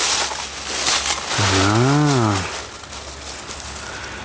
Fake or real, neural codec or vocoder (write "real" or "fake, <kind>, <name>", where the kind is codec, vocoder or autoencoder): real